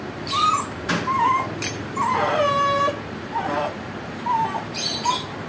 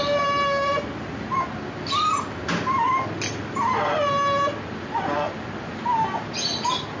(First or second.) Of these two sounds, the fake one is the first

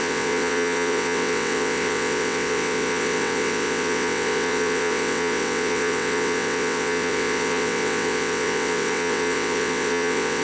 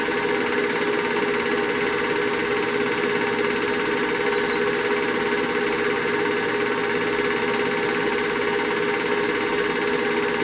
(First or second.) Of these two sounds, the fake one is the first